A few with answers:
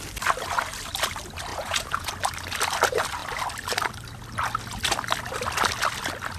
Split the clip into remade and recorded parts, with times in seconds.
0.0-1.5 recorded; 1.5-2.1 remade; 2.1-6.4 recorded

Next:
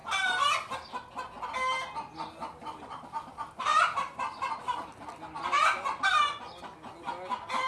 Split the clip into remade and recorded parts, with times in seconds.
0.0-7.7 recorded

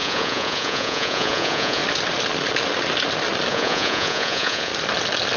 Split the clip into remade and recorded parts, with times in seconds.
0.0-1.8 remade; 1.8-3.5 recorded; 3.5-4.7 remade; 4.7-5.4 recorded

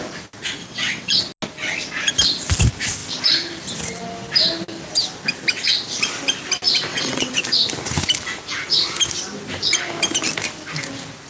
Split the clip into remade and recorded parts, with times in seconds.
0.0-0.6 recorded; 0.6-1.2 remade; 1.2-6.9 recorded; 6.9-7.4 remade; 7.4-11.3 recorded

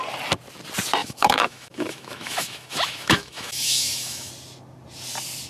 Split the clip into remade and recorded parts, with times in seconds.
0.0-1.0 recorded; 1.0-4.3 remade; 4.3-5.5 recorded